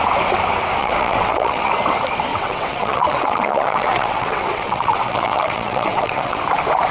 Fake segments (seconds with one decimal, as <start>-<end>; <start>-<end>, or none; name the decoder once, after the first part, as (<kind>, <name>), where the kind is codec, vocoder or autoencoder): 0.8-1.7 (vocoder, WaveNeXt); 2.3-6.4